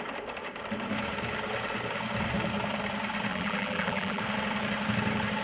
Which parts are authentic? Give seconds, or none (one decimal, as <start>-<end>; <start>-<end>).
0.0-3.3; 4.2-5.4